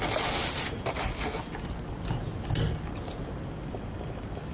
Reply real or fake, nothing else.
real